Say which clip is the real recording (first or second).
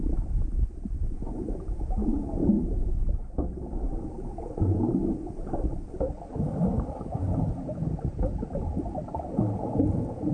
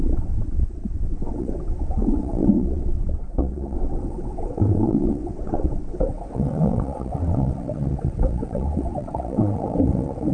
first